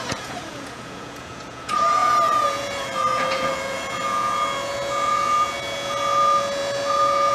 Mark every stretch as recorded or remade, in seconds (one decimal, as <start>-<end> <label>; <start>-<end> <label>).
0.0-7.3 remade